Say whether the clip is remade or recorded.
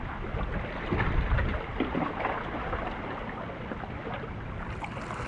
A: recorded